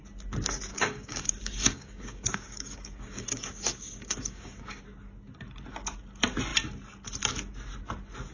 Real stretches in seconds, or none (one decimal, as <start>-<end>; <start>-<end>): 0.0-0.7; 4.8-8.3